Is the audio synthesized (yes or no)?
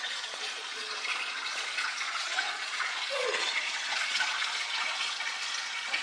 yes